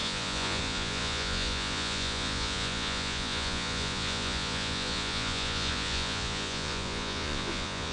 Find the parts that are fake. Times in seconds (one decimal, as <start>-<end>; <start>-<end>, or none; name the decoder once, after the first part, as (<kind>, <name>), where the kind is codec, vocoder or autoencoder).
0.0-7.9 (vocoder, Vocos)